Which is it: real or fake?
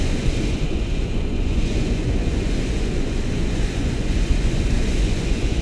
fake